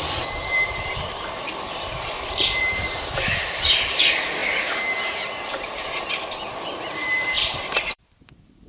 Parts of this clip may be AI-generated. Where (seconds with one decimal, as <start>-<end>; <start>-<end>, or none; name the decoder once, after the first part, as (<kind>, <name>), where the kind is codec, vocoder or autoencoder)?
0.0-4.4 (vocoder, BigVGAN v2); 6.6-8.7

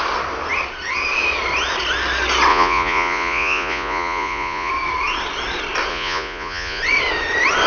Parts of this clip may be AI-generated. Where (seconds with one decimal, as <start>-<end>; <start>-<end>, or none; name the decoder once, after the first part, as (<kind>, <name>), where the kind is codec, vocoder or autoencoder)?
2.5-4.7 (vocoder, Vocos); 5.9-6.8